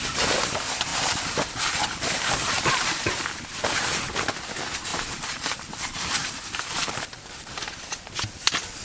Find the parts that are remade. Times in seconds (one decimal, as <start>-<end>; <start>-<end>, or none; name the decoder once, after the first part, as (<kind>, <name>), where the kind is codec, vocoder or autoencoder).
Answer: 0.9-3.4 (vocoder, BigVGAN v2); 4.9-7.7